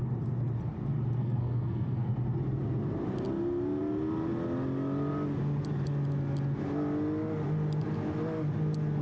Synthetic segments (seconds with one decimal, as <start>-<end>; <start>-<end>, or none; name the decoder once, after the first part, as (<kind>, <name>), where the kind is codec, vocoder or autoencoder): 1.2-2.1 (codec, SNAC)